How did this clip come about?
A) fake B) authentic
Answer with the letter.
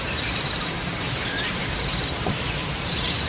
A